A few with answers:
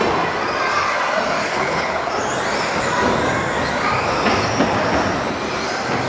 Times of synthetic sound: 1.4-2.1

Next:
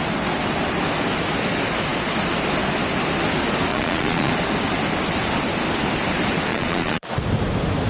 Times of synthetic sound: 3.7-4.3; 6.5-7.1

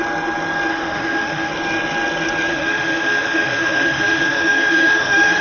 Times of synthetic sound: 0.7-1.5; 2.5-5.4

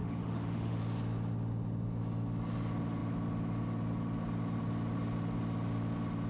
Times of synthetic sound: 0.0-0.8

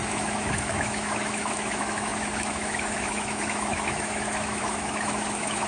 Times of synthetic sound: 0.0-5.7

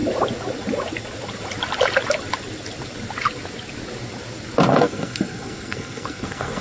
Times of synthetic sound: 4.7-6.6

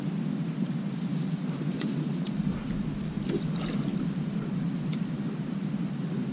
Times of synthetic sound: 1.1-2.5; 3.9-6.3

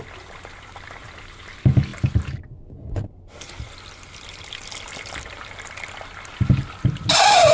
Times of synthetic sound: none